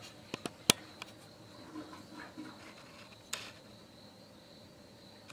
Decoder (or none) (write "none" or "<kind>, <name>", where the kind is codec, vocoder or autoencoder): none